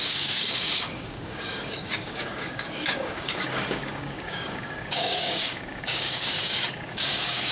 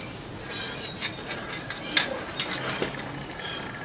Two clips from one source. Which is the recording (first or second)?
second